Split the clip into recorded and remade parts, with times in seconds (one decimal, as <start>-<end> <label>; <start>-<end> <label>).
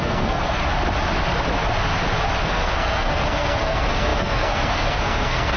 0.0-0.6 remade; 0.6-2.4 recorded; 2.4-5.6 remade